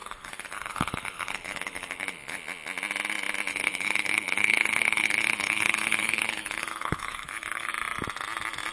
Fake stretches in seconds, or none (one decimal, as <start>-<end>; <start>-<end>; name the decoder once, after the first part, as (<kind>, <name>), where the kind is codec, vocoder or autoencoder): 0.0-2.4 (codec, HILCodec); 3.5-7.7